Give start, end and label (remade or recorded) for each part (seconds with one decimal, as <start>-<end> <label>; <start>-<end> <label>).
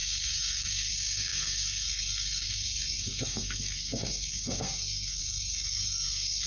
0.0-6.5 remade